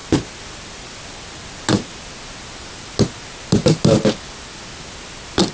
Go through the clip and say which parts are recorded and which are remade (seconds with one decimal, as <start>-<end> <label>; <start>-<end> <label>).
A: 0.0-5.5 recorded